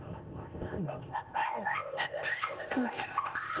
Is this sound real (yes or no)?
no